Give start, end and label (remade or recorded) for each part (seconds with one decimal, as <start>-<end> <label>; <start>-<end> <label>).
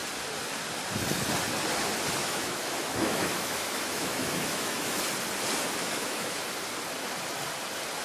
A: 0.0-2.2 recorded; 2.2-5.0 remade; 5.0-5.8 recorded; 5.8-6.4 remade; 6.4-8.0 recorded